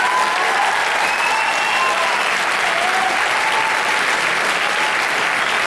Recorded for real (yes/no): yes